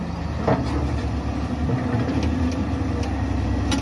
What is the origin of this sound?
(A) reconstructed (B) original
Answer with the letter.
B